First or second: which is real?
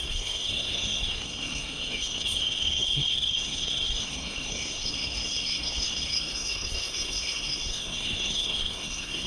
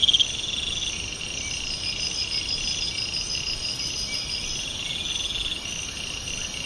second